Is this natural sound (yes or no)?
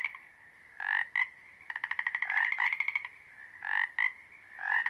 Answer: yes